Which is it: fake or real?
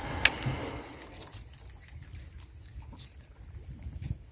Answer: real